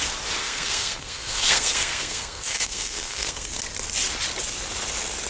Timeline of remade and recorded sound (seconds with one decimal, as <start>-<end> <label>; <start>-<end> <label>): 0.0-0.4 recorded; 0.4-3.6 remade; 3.6-5.3 recorded